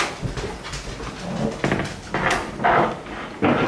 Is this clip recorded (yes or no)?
yes